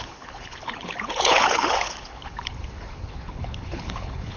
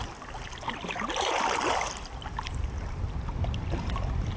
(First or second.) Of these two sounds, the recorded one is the second